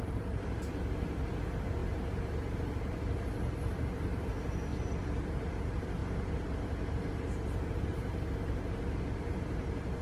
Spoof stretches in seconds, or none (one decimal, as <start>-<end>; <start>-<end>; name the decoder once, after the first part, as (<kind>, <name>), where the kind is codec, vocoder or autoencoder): 0.0-4.7 (vocoder, BigVGAN v2); 5.5-6.0; 7.1-10.0